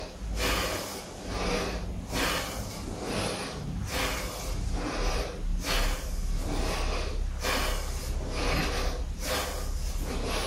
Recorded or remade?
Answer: recorded